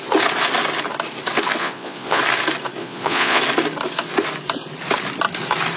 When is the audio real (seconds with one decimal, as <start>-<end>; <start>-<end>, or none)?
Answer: 0.0-1.6; 2.2-2.8; 3.4-5.8